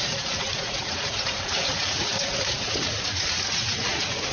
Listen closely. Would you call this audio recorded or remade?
remade